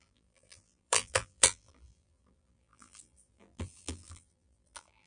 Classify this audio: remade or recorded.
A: remade